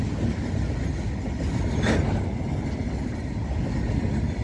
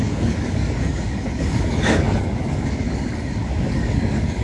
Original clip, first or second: first